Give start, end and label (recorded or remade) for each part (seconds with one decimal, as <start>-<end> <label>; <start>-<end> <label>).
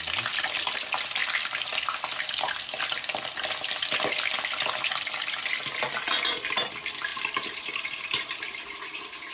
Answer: 0.0-7.1 recorded; 7.1-8.8 remade; 8.8-9.3 recorded